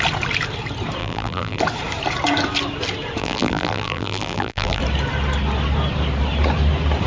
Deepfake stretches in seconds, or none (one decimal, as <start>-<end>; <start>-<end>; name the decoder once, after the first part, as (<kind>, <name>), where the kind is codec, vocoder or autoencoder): 1.0-1.6 (vocoder, BigVGAN v2); 3.2-4.8

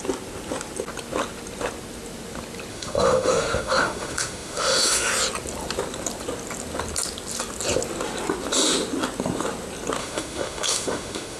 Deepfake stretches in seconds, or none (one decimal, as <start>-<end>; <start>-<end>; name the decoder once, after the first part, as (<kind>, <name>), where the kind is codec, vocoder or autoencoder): 2.7-5.1 (autoencoder, DAC-VAE); 10.0-11.4

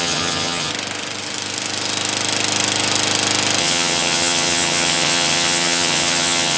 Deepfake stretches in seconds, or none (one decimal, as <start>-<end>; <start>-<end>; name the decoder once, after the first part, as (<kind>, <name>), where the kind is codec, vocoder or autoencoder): 0.0-0.7 (vocoder, HiFi-GAN); 3.6-6.6

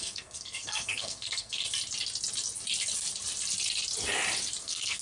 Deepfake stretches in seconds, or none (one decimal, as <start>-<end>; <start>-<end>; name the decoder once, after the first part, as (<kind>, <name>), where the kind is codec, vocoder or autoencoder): 0.0-1.6 (codec, SNAC); 4.6-5.0